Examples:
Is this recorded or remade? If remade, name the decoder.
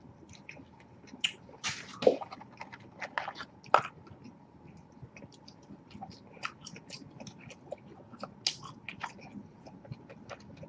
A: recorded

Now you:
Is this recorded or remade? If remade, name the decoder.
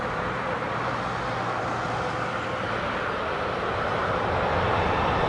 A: recorded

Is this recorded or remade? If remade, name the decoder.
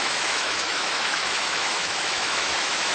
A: remade, autoencoder, DAC-VAE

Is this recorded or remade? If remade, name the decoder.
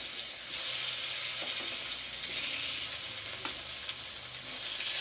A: recorded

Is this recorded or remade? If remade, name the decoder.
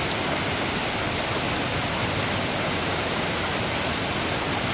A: recorded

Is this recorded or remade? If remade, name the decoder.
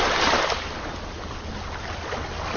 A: recorded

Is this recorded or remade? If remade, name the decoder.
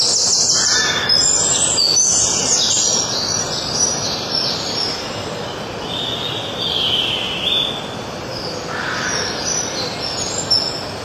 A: recorded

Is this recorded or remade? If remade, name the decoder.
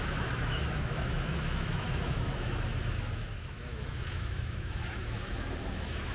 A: remade, autoencoder, DAC-VAE